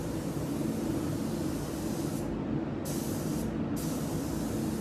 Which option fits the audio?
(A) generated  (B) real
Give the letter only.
B